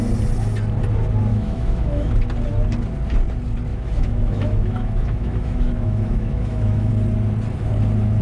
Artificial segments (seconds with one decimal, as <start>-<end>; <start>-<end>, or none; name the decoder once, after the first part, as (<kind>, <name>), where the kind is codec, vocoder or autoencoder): 1.3-2.1 (autoencoder, DAC-VAE); 3.7-6.9